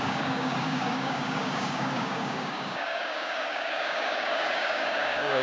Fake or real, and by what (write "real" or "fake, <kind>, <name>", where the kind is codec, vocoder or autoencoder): fake, codec, DAC